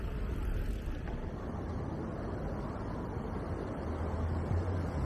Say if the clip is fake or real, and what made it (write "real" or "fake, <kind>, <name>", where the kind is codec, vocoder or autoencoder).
real